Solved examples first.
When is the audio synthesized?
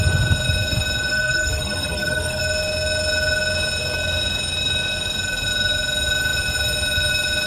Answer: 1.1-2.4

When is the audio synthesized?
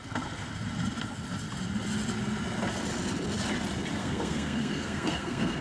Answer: 4.0-5.6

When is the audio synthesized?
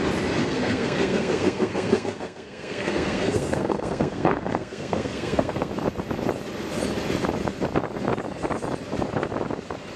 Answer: 0.4-5.7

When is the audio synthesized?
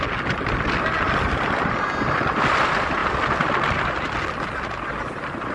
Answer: none